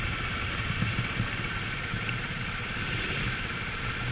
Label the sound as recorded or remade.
recorded